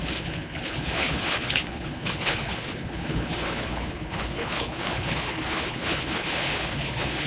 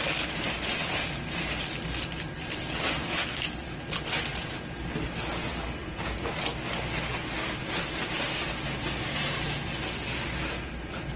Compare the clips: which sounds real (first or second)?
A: second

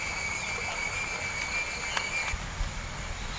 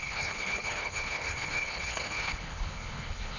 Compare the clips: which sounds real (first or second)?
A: first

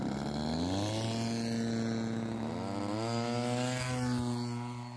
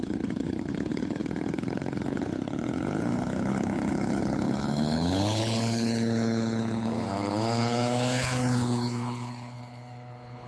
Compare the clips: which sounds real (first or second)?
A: first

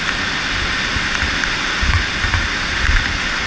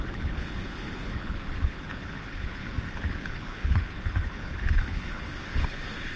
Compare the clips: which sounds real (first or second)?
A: first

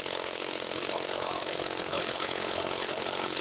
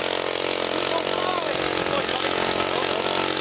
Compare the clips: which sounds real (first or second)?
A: second